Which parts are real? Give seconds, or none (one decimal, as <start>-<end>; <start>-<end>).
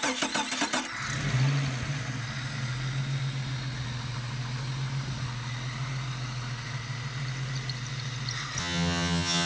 0.0-8.6